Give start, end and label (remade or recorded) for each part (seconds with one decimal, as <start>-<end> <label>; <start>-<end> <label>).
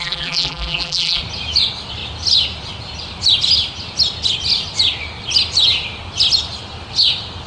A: 0.0-1.2 remade; 1.2-7.5 recorded